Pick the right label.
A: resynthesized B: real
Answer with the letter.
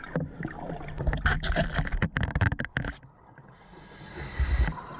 B